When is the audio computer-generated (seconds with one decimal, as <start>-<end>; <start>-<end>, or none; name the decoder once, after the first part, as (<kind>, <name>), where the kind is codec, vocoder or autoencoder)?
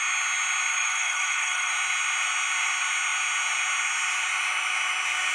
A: 0.7-1.7 (autoencoder, DAC-VAE)